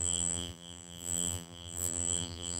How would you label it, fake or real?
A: fake